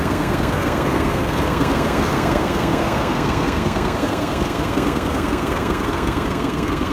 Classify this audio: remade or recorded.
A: remade